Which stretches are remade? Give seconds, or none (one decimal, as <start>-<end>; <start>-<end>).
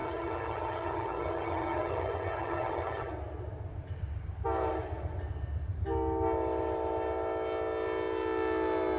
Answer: 0.0-3.1